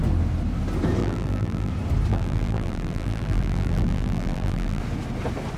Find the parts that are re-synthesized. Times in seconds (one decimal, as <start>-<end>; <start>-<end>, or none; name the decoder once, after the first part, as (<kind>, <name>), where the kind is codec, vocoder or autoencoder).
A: 1.0-1.7 (vocoder, BigVGAN v2); 2.1-4.8